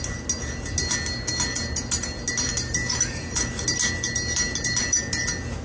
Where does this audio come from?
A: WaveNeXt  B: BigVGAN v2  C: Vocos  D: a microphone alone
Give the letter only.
D